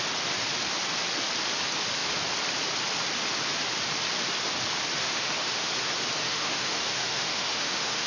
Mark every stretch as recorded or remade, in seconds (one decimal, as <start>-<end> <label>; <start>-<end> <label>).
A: 0.0-5.0 recorded; 5.0-5.7 remade; 5.7-6.2 recorded; 6.2-8.1 remade